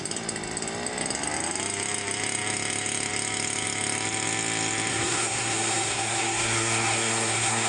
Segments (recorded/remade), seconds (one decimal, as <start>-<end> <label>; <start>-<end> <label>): 0.0-4.9 recorded; 4.9-7.7 remade